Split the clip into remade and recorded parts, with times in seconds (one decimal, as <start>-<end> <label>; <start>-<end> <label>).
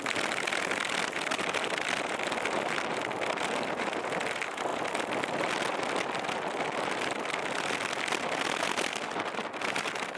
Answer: 0.0-10.2 recorded